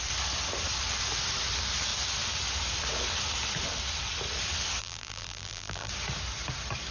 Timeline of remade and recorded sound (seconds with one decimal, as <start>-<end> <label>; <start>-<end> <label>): 0.0-4.8 recorded; 4.8-5.9 remade; 5.9-6.9 recorded